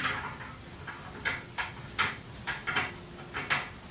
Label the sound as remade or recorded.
remade